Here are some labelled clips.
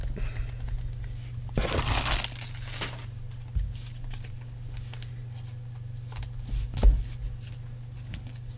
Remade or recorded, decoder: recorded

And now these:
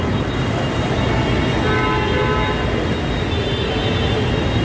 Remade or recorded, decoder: recorded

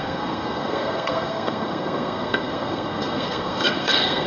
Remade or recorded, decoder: remade, codec, SNAC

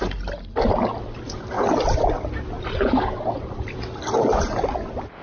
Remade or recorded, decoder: recorded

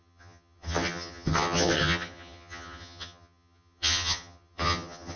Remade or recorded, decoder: remade, vocoder, HiFi-GAN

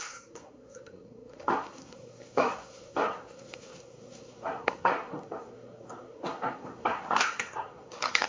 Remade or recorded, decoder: remade, codec, SNAC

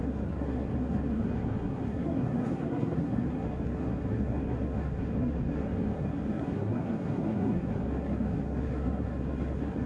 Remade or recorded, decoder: remade, codec, SNAC